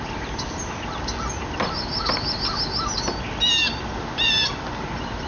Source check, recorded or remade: recorded